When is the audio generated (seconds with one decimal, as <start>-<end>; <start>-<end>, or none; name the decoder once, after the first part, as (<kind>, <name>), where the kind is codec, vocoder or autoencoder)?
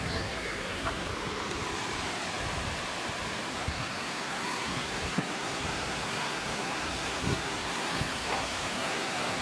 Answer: 0.0-1.1 (codec, SNAC); 3.5-9.4